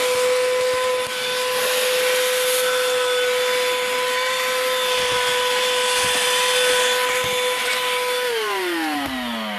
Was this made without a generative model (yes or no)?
yes